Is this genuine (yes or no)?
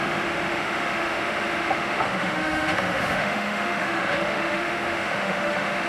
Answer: no